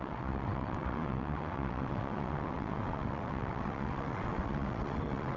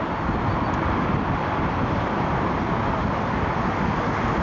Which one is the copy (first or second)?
first